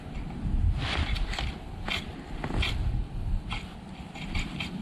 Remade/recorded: recorded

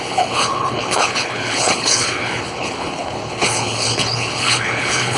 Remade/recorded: remade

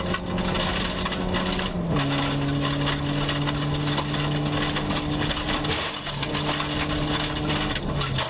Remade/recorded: recorded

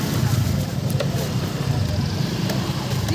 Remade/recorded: remade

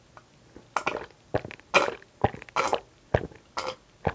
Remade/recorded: recorded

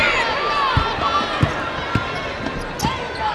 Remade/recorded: recorded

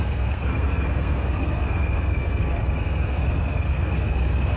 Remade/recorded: remade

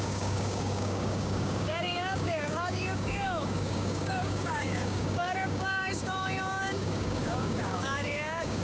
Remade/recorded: remade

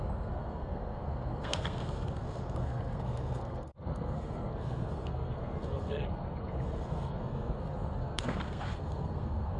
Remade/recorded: remade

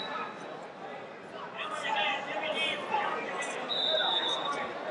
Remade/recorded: recorded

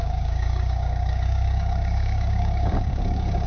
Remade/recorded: remade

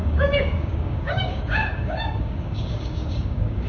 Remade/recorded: remade